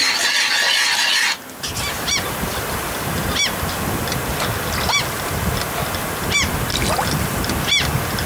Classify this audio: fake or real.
real